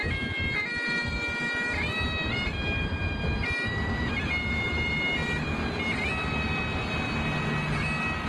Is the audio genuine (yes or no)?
yes